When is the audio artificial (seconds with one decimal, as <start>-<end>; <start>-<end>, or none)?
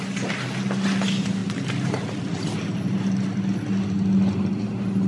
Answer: none